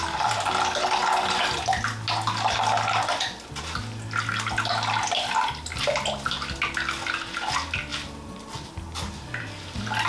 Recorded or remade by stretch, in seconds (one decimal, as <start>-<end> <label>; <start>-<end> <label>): 0.0-10.1 recorded